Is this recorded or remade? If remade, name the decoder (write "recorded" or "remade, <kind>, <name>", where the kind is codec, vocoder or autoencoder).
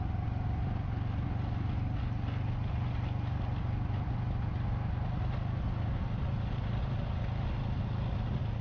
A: recorded